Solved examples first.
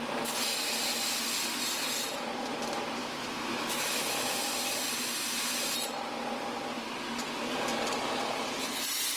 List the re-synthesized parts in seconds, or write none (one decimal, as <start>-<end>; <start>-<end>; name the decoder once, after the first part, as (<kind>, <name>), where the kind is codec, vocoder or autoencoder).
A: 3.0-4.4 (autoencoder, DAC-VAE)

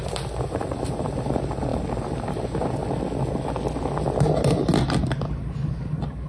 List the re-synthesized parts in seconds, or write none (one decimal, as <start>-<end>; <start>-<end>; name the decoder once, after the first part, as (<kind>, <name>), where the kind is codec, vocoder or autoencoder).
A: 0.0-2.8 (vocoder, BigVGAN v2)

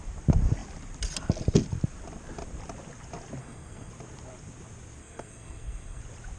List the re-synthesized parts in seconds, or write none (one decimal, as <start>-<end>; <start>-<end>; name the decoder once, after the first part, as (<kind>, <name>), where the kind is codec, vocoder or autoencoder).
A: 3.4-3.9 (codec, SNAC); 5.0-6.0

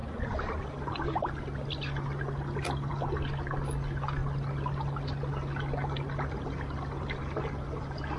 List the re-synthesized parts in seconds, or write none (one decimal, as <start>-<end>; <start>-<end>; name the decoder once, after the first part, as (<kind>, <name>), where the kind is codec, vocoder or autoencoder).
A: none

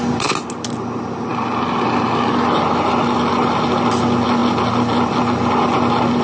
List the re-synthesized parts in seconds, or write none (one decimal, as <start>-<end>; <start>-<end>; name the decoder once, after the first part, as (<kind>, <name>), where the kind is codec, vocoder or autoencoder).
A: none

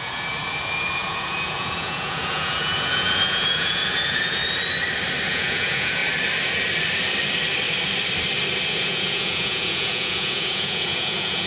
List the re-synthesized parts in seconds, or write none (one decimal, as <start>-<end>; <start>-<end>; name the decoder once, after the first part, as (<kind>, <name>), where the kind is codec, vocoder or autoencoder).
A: 0.0-4.4 (vocoder, Vocos); 5.3-6.0; 8.7-11.5

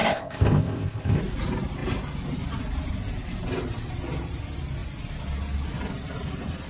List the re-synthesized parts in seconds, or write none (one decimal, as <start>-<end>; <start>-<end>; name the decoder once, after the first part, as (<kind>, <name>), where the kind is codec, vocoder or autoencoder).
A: 0.0-1.2 (codec, ZipCodec)